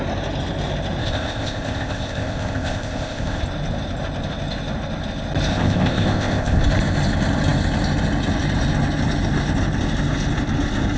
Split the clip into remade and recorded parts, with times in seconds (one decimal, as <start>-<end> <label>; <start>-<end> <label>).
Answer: 0.0-1.0 recorded; 1.0-3.4 remade; 3.4-5.5 recorded; 5.5-6.6 remade; 6.6-11.0 recorded